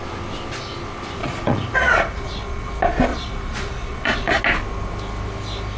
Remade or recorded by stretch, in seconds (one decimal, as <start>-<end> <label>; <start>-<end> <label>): 0.0-1.2 recorded; 1.2-2.7 remade; 2.7-3.1 recorded; 3.1-4.4 remade; 4.4-5.8 recorded